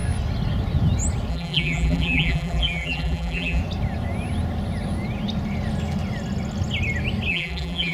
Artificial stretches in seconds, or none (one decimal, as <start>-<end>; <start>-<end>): 1.3-3.6; 7.3-7.9